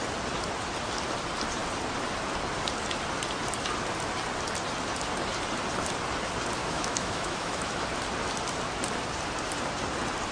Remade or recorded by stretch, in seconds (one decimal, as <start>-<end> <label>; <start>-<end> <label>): 0.0-6.6 recorded; 6.6-7.8 remade; 7.8-10.3 recorded